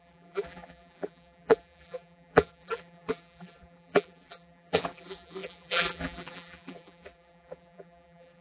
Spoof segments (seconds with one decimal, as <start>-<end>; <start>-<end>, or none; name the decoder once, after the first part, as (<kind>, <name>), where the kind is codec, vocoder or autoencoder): 0.0-8.4 (vocoder, BigVGAN v2)